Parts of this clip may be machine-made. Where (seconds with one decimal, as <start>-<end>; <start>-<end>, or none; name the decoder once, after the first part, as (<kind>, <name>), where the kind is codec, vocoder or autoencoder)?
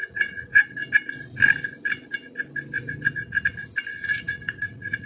0.0-0.8 (vocoder, Vocos); 3.9-5.1